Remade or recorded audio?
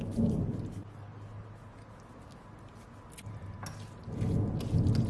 recorded